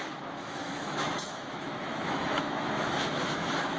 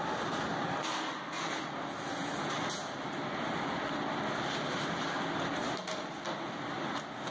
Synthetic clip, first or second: first